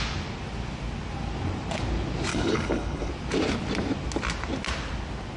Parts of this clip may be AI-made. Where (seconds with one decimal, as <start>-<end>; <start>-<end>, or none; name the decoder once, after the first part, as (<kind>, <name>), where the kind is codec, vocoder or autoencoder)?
2.3-3.1 (codec, HILCodec)